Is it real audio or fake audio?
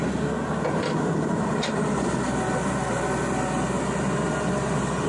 real